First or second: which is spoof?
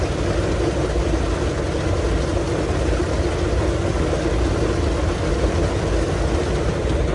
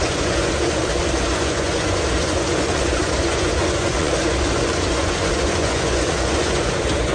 second